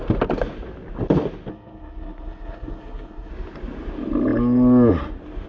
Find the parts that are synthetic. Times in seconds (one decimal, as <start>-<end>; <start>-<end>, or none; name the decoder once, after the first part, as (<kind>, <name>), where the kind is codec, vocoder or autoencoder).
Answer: 1.5-3.3 (codec, SNAC)